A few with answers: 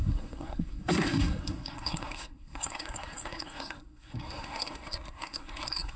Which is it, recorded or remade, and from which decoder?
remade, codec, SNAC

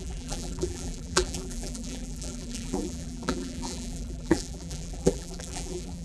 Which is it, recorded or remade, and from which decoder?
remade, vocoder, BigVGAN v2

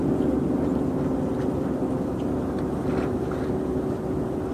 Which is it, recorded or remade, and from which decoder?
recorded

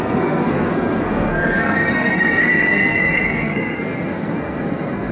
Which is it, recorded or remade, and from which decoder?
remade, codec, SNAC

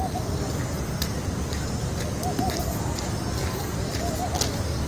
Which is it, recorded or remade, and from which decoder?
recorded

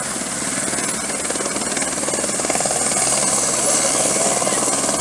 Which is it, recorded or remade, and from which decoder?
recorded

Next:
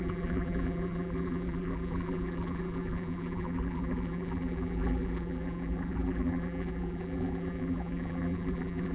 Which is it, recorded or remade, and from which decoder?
remade, vocoder, BigVGAN v2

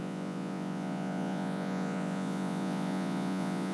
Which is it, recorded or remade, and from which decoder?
remade, vocoder, Vocos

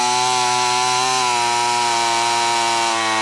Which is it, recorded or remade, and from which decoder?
recorded